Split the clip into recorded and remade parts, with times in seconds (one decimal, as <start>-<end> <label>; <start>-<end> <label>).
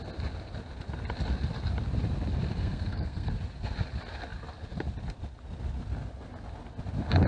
0.0-2.6 recorded; 2.6-3.3 remade; 3.3-7.3 recorded